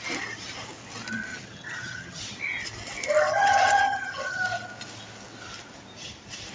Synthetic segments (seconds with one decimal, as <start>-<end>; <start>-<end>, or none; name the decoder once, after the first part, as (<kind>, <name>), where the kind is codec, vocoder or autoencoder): 1.3-2.2 (vocoder, HiFi-GAN); 3.3-4.4